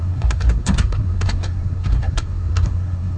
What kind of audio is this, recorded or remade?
remade